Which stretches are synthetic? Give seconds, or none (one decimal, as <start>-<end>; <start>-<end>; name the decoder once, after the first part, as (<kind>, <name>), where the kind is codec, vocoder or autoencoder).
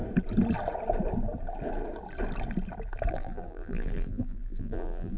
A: 3.1-5.2 (vocoder, BigVGAN v2)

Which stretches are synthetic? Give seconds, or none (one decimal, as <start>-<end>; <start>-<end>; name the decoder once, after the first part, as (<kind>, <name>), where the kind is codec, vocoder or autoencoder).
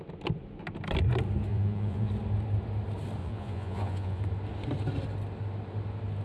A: 1.5-2.1 (vocoder, Vocos); 3.2-4.2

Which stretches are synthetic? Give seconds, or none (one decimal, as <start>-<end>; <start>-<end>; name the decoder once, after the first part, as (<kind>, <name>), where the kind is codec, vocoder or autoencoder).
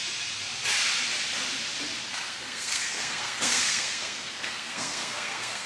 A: 2.1-5.7 (codec, SNAC)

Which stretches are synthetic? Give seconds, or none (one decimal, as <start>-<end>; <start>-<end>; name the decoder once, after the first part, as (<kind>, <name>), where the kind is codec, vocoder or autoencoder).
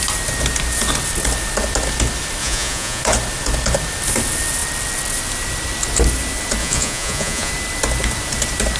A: 2.4-3.0 (vocoder, Vocos); 6.6-7.5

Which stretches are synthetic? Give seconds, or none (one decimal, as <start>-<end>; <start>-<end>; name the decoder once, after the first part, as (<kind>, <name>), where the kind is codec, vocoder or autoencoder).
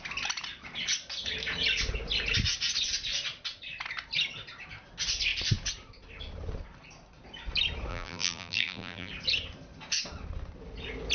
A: 7.9-9.1 (vocoder, BigVGAN v2)